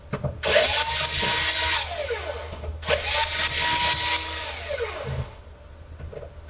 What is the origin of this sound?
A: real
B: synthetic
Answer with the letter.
A